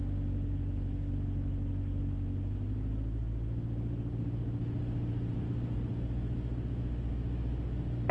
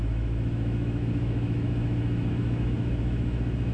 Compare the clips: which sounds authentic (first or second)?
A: first